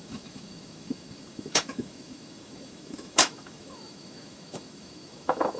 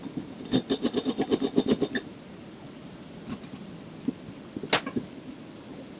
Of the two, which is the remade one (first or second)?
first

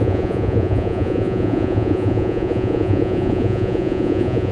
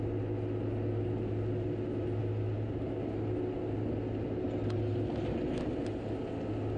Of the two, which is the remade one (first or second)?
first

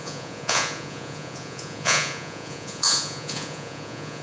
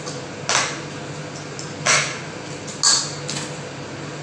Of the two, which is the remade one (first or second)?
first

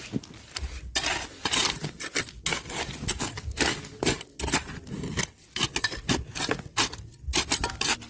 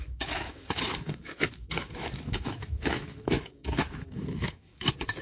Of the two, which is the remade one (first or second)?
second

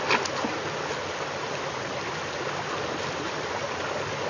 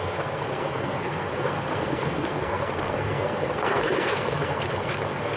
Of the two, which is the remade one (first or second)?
second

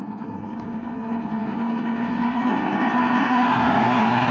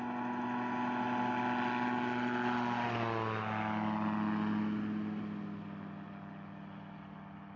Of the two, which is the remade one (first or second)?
first